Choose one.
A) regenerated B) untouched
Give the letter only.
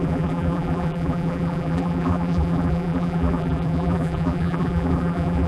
A